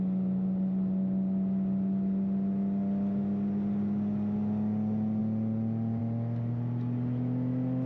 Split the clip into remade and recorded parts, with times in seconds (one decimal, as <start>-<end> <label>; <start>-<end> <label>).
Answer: 0.0-7.9 recorded